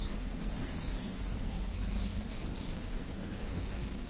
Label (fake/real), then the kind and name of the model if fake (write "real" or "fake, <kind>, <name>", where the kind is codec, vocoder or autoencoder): fake, codec, SNAC